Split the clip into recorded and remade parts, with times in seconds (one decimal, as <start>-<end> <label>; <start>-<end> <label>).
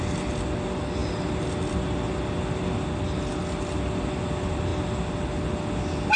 0.0-6.2 recorded